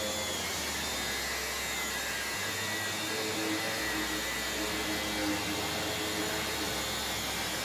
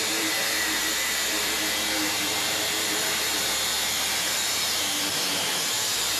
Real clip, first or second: first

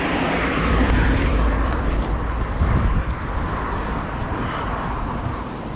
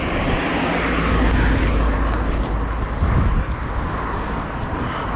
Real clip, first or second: second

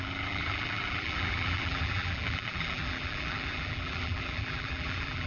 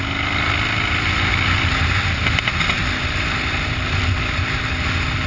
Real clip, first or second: second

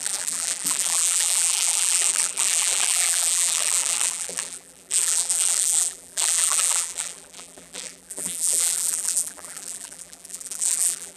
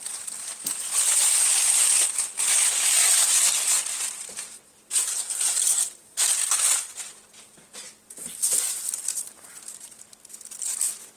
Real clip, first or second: second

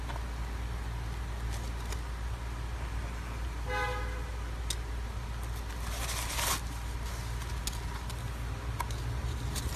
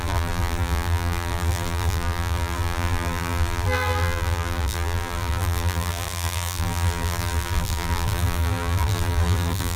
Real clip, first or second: first